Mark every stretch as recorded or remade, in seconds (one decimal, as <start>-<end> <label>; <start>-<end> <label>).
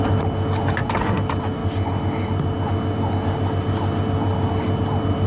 0.0-5.3 recorded